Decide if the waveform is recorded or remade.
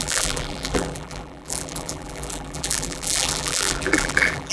remade